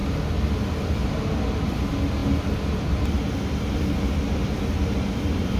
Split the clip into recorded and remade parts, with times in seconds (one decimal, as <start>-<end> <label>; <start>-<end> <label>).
0.0-1.1 remade; 1.1-2.2 recorded; 2.2-3.1 remade; 3.1-5.6 recorded